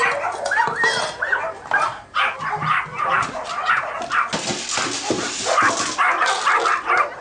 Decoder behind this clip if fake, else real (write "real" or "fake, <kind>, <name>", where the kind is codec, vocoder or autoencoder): real